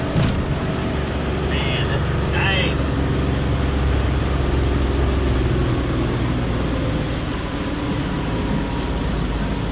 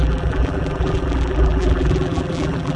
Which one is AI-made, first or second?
second